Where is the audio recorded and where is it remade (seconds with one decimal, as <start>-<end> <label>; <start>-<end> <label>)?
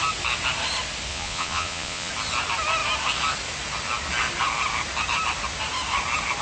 0.0-1.1 recorded; 1.1-2.1 remade; 2.1-6.4 recorded